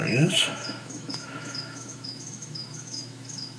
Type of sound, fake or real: fake